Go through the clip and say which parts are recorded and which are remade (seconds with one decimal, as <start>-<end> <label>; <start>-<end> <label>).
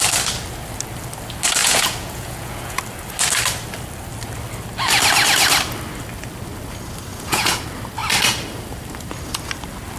0.0-1.6 recorded; 1.6-2.8 remade; 2.8-7.1 recorded; 7.1-7.6 remade; 7.6-10.0 recorded